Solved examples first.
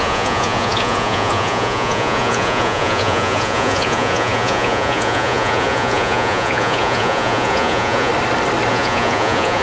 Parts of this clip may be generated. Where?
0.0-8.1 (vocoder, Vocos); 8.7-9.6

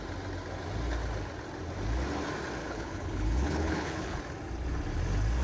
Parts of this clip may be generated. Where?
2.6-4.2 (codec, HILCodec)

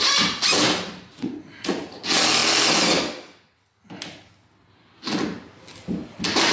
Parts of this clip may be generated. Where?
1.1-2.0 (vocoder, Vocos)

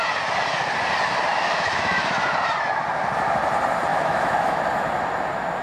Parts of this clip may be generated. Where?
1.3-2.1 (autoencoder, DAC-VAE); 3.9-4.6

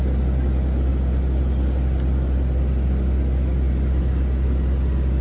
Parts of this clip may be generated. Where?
none

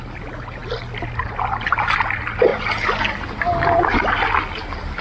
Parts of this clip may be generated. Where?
none

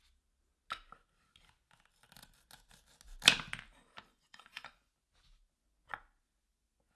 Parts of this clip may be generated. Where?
4.1-4.9 (vocoder, Vocos)

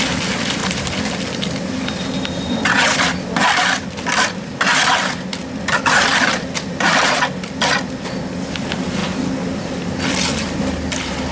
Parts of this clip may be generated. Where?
0.0-0.6 (vocoder, BigVGAN v2); 1.6-9.0; 10.0-11.3